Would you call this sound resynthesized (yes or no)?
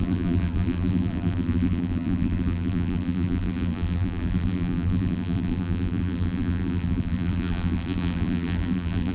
yes